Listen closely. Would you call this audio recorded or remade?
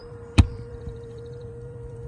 remade